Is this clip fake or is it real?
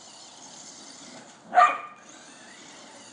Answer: real